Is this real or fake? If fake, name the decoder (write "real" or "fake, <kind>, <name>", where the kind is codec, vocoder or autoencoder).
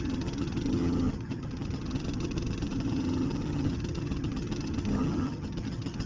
fake, vocoder, HiFi-GAN